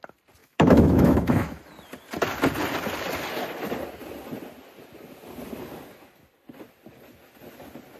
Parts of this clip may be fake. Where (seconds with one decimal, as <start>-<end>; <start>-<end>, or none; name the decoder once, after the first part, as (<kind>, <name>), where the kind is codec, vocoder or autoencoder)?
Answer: 0.4-1.6 (autoencoder, DAC-VAE)